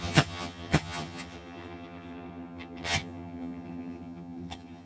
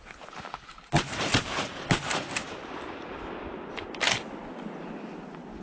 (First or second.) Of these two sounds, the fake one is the first